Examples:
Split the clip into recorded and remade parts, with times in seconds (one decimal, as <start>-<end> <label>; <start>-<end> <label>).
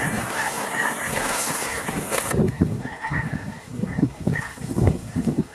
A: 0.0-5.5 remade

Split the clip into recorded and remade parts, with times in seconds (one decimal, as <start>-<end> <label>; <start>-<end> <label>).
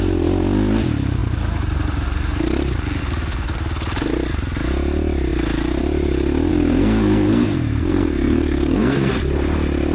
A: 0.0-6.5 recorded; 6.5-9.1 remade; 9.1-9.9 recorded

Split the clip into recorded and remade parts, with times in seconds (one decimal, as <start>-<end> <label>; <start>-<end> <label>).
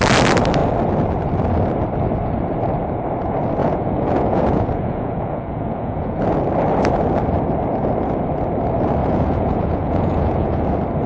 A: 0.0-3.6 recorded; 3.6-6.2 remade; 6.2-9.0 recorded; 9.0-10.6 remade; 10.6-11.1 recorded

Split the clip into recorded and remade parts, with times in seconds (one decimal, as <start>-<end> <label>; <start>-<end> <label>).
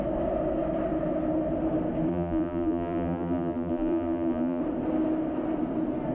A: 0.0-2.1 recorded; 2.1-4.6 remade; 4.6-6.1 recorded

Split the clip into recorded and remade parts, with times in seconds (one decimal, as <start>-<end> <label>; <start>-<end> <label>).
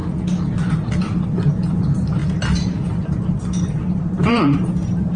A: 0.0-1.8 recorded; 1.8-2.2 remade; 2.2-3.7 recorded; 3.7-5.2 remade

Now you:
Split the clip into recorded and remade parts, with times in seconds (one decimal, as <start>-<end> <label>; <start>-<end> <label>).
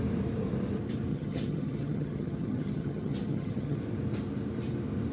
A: 0.0-1.1 recorded; 1.1-3.8 remade; 3.8-5.1 recorded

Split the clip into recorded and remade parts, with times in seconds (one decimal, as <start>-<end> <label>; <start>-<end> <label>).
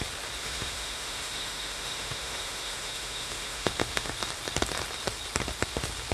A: 0.0-0.4 recorded; 0.4-4.1 remade; 4.1-6.1 recorded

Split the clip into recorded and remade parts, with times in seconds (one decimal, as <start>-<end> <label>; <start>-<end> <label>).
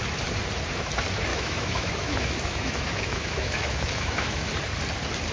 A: 0.0-1.3 recorded; 1.3-4.5 remade; 4.5-5.3 recorded